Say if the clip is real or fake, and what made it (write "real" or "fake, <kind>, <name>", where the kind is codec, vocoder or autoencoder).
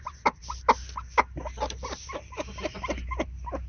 real